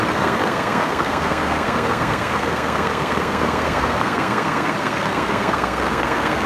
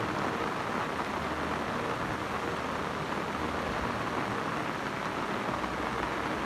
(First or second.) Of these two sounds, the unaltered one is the second